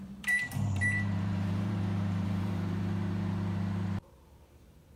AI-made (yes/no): yes